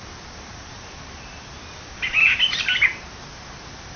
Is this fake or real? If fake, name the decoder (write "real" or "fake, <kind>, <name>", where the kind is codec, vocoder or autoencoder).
real